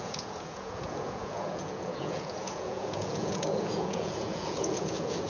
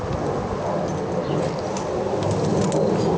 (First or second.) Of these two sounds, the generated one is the first